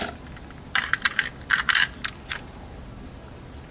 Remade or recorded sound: recorded